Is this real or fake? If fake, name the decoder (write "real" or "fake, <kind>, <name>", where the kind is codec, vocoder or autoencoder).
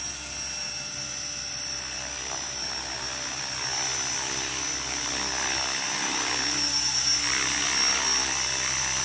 real